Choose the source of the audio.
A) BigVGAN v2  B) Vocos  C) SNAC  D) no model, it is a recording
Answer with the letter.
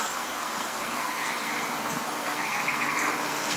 C